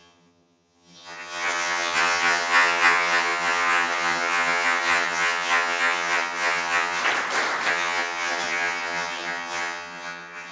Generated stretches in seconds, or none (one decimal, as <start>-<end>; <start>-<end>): 0.0-7.0; 7.7-10.5